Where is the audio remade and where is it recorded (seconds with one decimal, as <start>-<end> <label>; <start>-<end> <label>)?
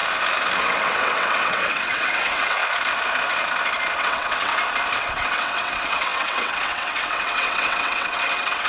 0.0-0.6 recorded; 0.6-2.6 remade; 2.6-4.0 recorded; 4.0-4.5 remade; 4.5-5.0 recorded; 5.0-8.7 remade